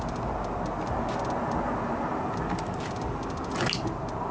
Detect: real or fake real